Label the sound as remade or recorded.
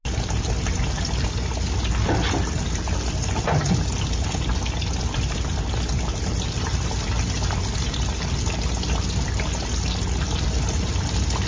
recorded